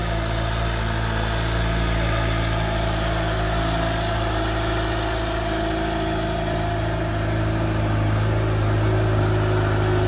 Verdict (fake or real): real